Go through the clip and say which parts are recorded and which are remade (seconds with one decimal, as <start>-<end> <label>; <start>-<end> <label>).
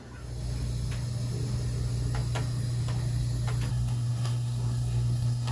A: 0.0-3.7 recorded; 3.7-5.5 remade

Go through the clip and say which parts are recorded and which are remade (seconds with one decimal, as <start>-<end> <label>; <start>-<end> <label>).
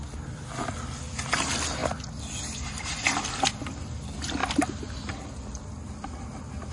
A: 0.0-6.7 recorded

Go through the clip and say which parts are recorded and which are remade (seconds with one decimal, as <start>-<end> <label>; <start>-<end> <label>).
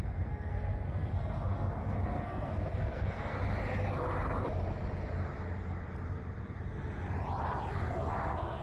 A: 0.0-3.4 remade; 3.4-7.7 recorded; 7.7-8.6 remade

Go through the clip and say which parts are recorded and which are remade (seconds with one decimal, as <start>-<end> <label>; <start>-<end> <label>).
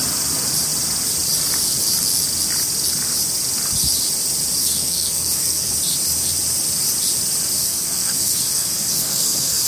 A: 0.0-4.6 recorded; 4.6-5.7 remade; 5.7-7.6 recorded; 7.6-9.7 remade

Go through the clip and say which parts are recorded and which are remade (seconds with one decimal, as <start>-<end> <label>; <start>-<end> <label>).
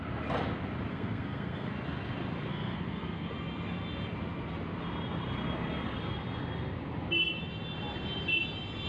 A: 0.0-0.9 recorded; 0.9-1.7 remade; 1.7-2.5 recorded; 2.5-3.3 remade; 3.3-8.9 recorded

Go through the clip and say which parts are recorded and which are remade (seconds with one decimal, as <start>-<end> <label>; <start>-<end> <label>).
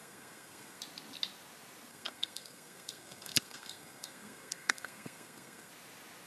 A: 0.0-0.8 remade; 0.8-1.9 recorded; 1.9-5.7 remade; 5.7-6.3 recorded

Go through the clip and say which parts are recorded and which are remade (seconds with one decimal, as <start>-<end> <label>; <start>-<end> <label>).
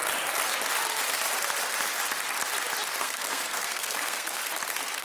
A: 0.0-3.0 recorded; 3.0-4.4 remade; 4.4-5.0 recorded